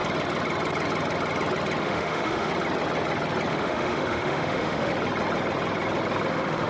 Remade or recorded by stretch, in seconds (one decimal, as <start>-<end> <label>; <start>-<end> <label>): 0.0-1.8 recorded; 1.8-2.5 remade; 2.5-3.5 recorded; 3.5-4.9 remade; 4.9-6.3 recorded; 6.3-6.7 remade